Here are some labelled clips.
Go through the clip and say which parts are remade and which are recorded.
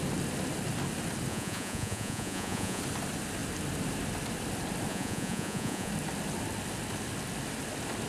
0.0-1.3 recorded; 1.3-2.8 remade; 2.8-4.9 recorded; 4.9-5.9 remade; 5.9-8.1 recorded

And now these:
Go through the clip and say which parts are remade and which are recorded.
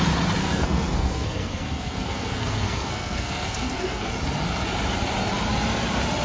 0.0-0.4 recorded; 0.4-4.1 remade; 4.1-6.2 recorded